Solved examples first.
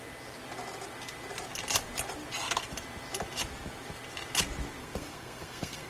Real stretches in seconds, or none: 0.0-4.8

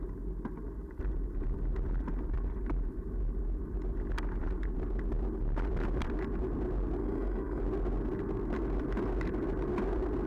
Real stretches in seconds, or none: 0.0-7.0; 7.6-10.3

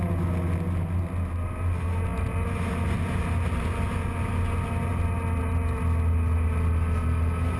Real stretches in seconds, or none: 0.0-7.6

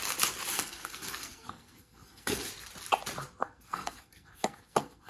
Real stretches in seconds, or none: 0.0-0.5; 2.5-3.4

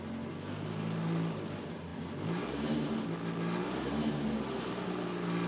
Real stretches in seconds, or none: 0.0-5.5

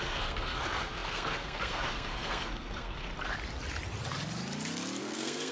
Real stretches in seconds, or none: 3.1-5.0